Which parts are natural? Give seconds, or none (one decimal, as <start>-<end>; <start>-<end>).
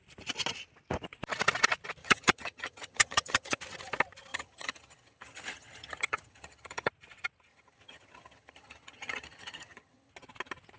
0.0-2.0; 3.6-4.3; 6.9-7.5; 10.1-10.8